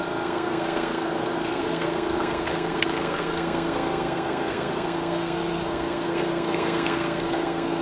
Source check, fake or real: fake